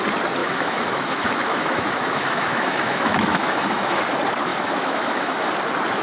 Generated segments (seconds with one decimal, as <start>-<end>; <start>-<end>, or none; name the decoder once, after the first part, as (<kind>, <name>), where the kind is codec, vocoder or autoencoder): 0.4-4.0 (autoencoder, DAC-VAE); 4.5-5.5